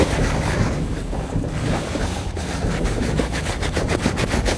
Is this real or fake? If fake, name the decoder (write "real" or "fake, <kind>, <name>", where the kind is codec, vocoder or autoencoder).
fake, codec, DAC